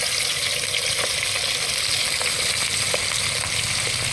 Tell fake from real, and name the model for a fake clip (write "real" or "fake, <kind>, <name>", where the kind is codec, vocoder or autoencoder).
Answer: real